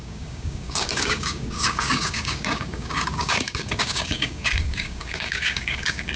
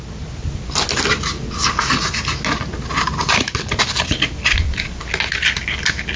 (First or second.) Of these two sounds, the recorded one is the second